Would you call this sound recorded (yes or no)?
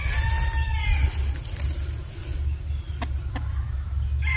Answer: yes